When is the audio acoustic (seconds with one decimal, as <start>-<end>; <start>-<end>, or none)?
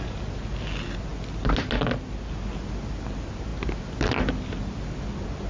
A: 0.0-5.5